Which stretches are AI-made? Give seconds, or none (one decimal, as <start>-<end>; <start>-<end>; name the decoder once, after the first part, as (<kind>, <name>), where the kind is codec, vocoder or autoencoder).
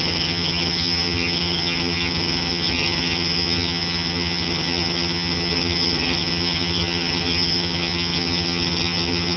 0.0-9.4 (vocoder, HiFi-GAN)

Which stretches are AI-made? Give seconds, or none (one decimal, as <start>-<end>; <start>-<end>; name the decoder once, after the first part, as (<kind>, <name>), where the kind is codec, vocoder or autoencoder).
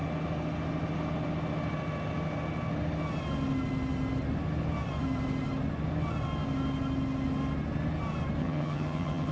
8.4-9.3 (vocoder, HiFi-GAN)